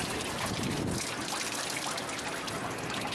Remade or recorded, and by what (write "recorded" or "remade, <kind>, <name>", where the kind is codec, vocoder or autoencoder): remade, vocoder, BigVGAN v2